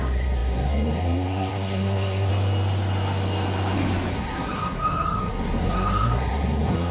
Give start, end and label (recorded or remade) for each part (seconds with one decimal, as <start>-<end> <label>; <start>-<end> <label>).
0.0-2.3 remade; 2.3-4.1 recorded; 4.1-6.9 remade